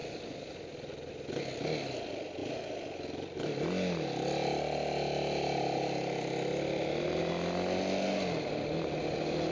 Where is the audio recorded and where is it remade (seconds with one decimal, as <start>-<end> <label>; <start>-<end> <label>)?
0.0-9.5 recorded